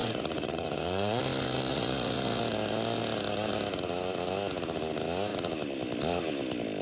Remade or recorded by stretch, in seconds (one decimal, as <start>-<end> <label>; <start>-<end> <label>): 0.0-1.2 remade; 1.2-1.7 recorded; 1.7-2.4 remade; 2.4-6.8 recorded